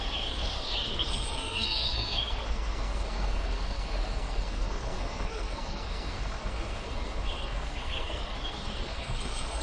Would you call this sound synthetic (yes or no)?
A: yes